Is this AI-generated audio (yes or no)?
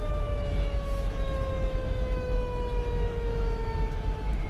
yes